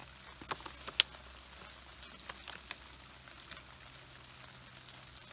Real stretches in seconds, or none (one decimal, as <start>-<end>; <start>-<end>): 0.0-5.3